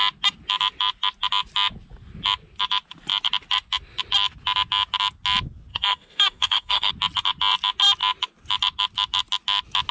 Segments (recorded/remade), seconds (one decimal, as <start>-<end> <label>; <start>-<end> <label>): 0.0-5.7 recorded; 5.7-6.9 remade; 6.9-9.9 recorded